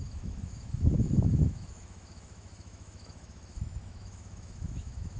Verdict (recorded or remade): remade